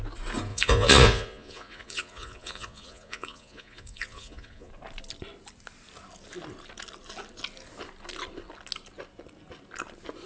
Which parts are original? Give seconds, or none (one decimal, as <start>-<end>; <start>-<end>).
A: 0.0-0.5; 4.7-10.3